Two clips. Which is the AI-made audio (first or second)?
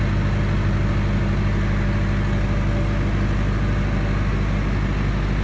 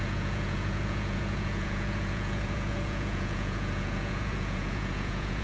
second